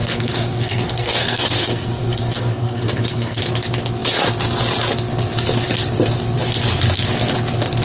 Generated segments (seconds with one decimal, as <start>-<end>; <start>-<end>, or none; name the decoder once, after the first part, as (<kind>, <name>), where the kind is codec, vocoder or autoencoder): 0.0-3.4 (codec, SNAC)